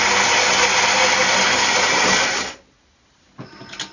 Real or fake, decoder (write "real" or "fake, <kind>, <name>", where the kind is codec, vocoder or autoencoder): real